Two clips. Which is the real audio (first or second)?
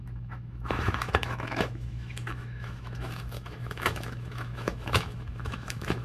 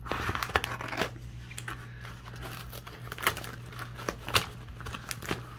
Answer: second